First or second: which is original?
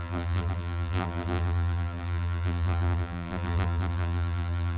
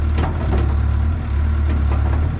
second